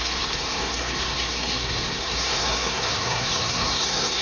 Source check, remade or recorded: remade